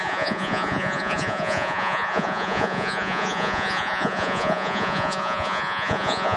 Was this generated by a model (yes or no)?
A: yes